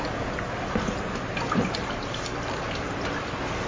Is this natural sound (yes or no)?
yes